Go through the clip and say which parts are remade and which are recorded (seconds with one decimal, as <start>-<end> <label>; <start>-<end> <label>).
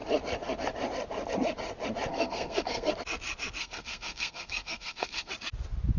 0.0-2.1 recorded; 2.1-2.9 remade; 2.9-3.6 recorded; 3.6-5.3 remade; 5.3-6.0 recorded